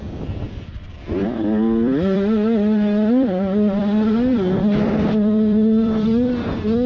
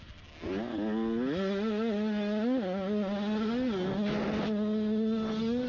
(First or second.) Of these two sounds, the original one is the second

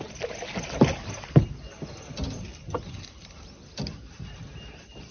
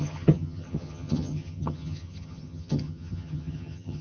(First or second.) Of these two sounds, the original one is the first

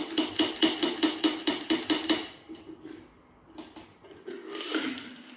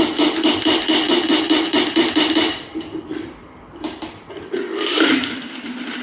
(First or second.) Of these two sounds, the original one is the first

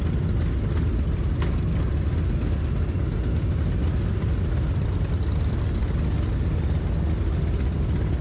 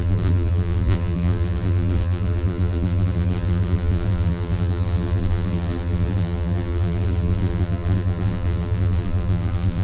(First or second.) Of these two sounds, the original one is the first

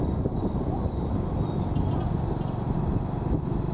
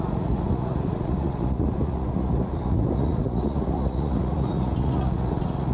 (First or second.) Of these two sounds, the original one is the first